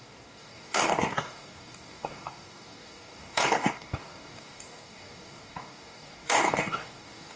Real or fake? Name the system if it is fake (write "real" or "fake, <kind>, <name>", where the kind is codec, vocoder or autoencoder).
fake, codec, DAC